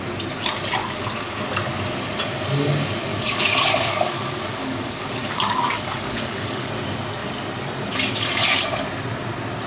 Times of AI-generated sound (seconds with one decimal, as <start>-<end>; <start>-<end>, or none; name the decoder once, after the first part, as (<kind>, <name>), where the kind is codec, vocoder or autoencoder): 0.8-1.4 (codec, DAC); 3.1-6.7